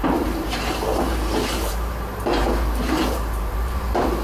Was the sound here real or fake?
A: fake